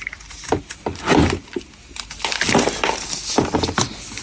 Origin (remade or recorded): recorded